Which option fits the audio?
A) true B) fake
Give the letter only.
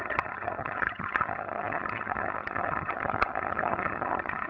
B